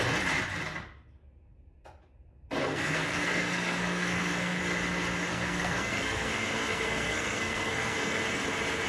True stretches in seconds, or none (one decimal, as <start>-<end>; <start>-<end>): 0.0-2.6; 4.6-5.3; 8.2-8.9